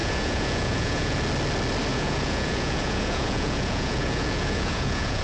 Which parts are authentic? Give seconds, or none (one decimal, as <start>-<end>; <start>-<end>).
1.2-1.9